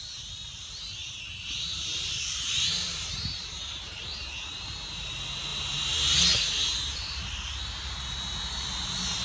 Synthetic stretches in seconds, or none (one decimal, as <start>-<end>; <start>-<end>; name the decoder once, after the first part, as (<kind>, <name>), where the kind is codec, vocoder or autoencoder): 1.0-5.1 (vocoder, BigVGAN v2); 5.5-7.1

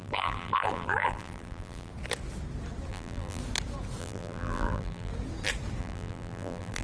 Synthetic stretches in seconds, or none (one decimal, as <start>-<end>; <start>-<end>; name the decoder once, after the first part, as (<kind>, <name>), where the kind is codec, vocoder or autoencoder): 0.0-1.9 (vocoder, BigVGAN v2); 2.9-3.4; 4.0-5.1; 5.8-6.8

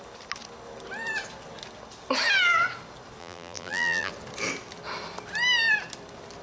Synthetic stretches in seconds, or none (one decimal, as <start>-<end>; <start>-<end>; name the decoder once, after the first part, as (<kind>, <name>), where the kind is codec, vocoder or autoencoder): 3.2-4.1 (vocoder, BigVGAN v2)

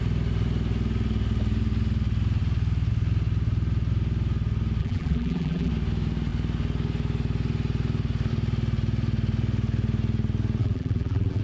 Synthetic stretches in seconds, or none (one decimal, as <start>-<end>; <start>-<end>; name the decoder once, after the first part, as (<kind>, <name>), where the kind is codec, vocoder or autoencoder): 4.8-5.7 (vocoder, BigVGAN v2); 10.6-11.4

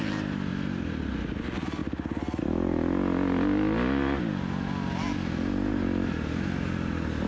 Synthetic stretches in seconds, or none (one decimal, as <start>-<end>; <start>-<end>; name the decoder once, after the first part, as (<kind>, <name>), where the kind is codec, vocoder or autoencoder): 0.5-1.1 (vocoder, BigVGAN v2)